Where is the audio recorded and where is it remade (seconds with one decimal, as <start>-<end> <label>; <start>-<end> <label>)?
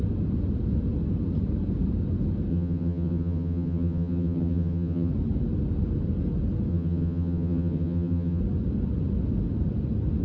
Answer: 0.0-2.5 recorded; 2.5-5.1 remade; 5.1-6.7 recorded; 6.7-8.4 remade; 8.4-10.2 recorded